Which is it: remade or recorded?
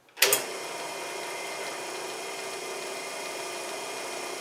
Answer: recorded